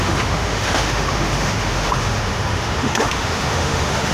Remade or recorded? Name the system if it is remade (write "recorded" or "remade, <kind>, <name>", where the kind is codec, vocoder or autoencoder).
remade, autoencoder, DAC-VAE